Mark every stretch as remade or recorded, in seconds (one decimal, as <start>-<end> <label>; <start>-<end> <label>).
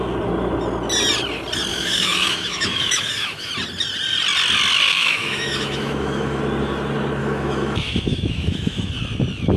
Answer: 0.0-1.7 recorded; 1.7-3.5 remade; 3.5-4.9 recorded; 4.9-6.4 remade; 6.4-7.2 recorded; 7.2-8.9 remade; 8.9-9.6 recorded